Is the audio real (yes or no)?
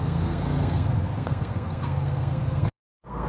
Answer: no